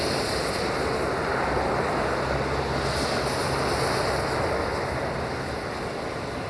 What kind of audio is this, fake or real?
real